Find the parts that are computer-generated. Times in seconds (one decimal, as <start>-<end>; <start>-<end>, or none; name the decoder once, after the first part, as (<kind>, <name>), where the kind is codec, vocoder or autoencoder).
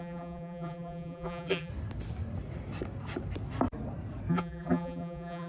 0.0-1.7 (vocoder, BigVGAN v2); 4.3-5.5